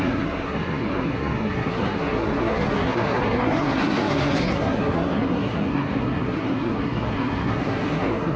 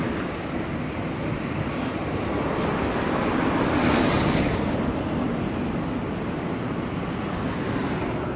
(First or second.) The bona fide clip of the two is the second